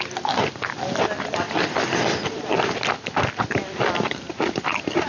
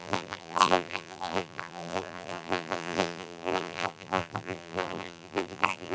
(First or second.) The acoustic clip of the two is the first